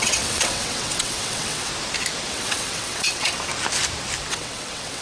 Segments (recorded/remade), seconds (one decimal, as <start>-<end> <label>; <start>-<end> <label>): 0.0-1.7 remade; 1.7-2.3 recorded; 2.3-3.5 remade; 3.5-4.3 recorded; 4.3-5.0 remade